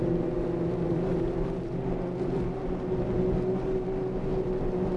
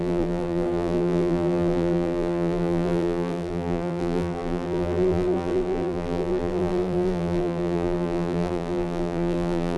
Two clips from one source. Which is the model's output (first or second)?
second